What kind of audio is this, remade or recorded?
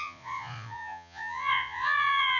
remade